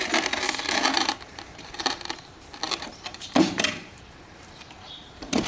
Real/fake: fake